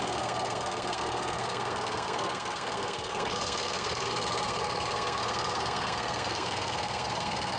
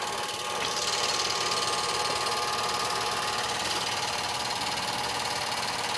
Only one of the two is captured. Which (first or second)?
second